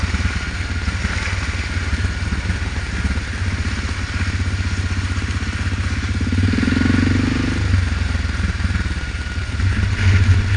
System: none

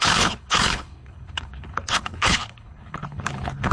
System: codec, HILCodec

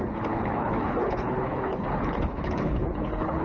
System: codec, HILCodec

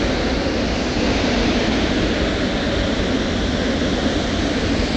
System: none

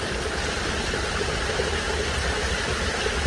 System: none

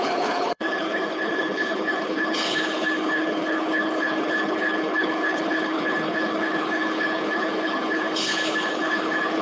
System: codec, HILCodec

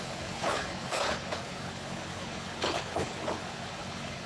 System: codec, HILCodec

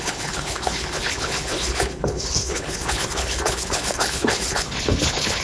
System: codec, HILCodec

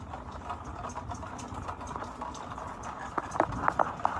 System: none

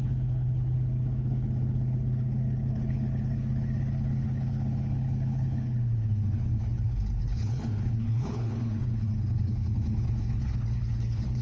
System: codec, HILCodec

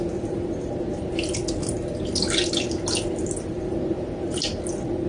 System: none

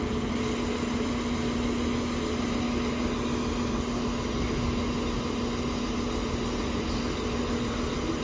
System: none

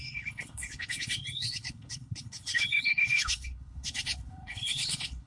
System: codec, HILCodec